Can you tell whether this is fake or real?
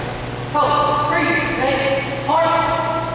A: real